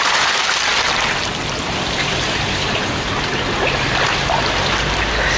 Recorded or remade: recorded